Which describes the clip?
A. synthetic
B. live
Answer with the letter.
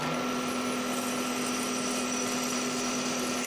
B